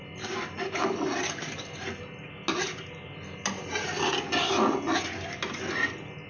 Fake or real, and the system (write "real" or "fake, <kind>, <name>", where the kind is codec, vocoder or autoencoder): real